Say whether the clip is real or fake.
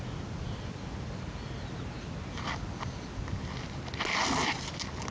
real